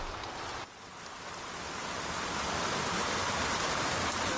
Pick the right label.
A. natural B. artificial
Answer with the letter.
A